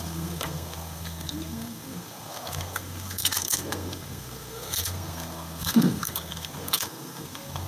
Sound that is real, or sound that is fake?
fake